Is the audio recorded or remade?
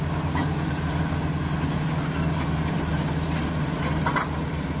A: recorded